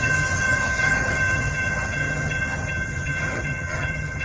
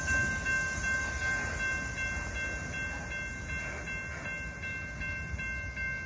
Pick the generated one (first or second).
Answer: first